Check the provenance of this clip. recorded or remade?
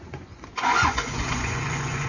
remade